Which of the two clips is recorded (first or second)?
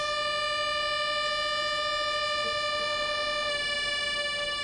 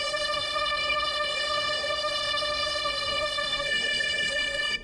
first